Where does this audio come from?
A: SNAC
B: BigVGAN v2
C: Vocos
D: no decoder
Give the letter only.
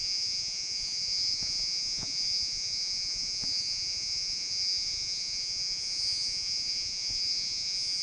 C